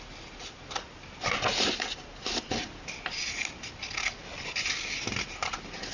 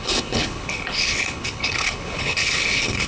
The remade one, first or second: second